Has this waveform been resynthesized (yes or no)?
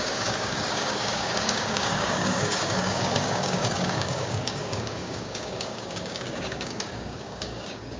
yes